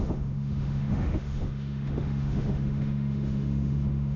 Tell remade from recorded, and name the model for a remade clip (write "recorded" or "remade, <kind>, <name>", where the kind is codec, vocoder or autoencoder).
remade, autoencoder, DAC-VAE